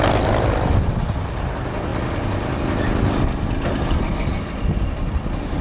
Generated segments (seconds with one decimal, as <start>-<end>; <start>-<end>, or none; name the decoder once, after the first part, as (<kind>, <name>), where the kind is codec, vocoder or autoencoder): none